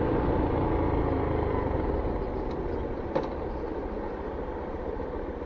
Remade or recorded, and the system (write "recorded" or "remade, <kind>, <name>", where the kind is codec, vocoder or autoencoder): recorded